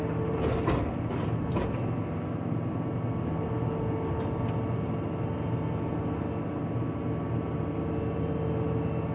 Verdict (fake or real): real